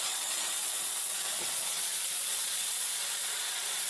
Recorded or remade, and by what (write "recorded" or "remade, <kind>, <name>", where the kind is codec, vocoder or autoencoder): remade, vocoder, Vocos